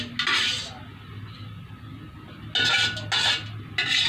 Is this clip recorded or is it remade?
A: recorded